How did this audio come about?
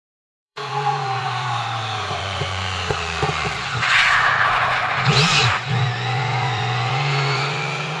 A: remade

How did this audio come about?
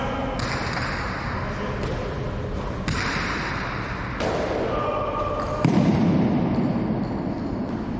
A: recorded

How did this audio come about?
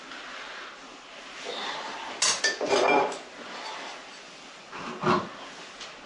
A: recorded